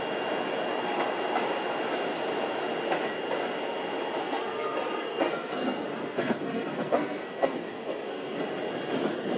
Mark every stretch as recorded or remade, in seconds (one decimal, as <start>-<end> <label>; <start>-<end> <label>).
0.0-4.2 recorded; 4.2-8.4 remade; 8.4-9.4 recorded